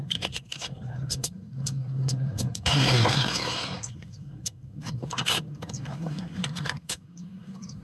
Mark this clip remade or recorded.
remade